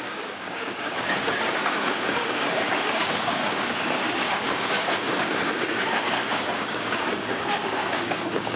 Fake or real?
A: fake